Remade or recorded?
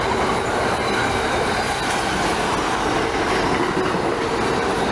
recorded